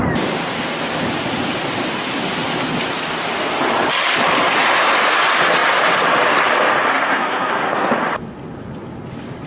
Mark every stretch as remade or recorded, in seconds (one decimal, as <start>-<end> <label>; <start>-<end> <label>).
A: 0.0-6.9 recorded; 6.9-7.9 remade; 7.9-9.5 recorded